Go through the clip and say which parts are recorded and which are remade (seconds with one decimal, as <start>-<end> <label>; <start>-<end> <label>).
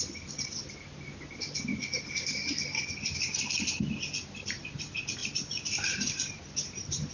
0.0-5.2 recorded; 5.2-7.1 remade